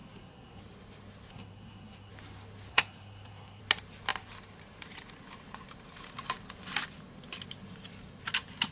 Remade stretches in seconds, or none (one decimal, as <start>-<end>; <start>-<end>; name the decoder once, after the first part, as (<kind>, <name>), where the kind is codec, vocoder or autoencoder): 0.0-0.6 (codec, SNAC); 1.3-2.1; 2.7-3.6